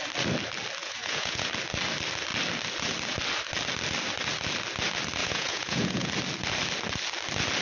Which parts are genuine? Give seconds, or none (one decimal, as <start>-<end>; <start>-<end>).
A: 0.0-0.8; 1.5-5.2; 6.1-7.6